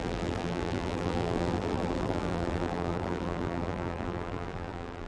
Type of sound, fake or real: fake